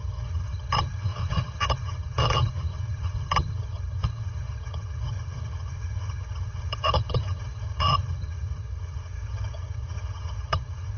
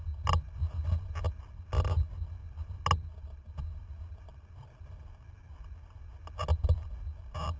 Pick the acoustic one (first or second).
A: second